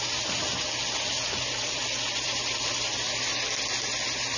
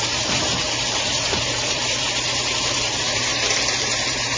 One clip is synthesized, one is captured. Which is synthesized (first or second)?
second